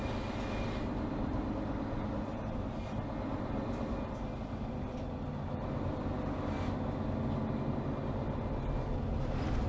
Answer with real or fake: real